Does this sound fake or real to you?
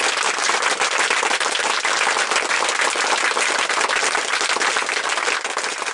real